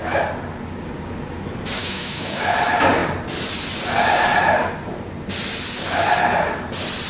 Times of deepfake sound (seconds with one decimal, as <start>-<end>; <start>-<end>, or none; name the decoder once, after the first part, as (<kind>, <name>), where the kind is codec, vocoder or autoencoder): 1.8-2.4 (autoencoder, DAC-VAE)